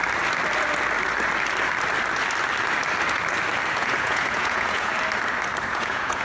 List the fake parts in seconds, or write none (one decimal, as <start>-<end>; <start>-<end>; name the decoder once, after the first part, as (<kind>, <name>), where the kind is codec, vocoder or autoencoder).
3.7-4.9 (vocoder, Vocos); 5.7-6.2